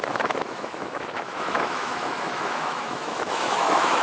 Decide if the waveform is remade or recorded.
remade